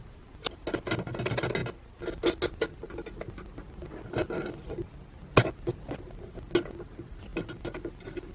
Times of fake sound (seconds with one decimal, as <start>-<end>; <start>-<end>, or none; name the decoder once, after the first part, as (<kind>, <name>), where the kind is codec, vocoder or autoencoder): none